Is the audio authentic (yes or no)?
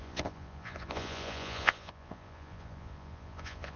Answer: no